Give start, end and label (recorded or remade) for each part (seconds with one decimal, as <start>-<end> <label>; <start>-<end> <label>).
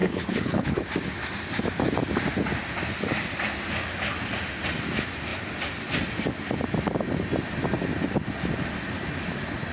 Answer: 0.0-0.8 remade; 0.8-9.7 recorded